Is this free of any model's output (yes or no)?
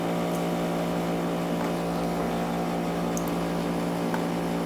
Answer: yes